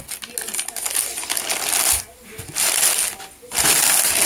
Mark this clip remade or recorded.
recorded